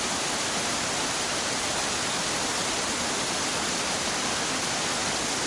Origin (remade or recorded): recorded